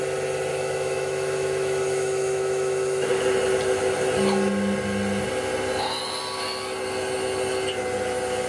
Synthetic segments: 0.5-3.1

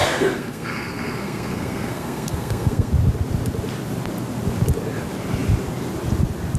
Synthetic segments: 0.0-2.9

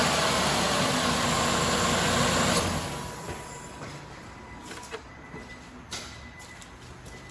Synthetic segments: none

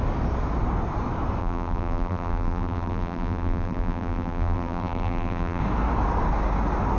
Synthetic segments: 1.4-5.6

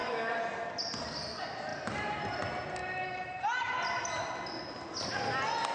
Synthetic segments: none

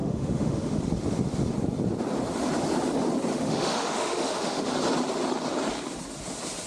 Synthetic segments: 0.0-0.8; 3.3-4.7